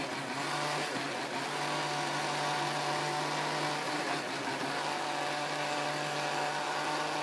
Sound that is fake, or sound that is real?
real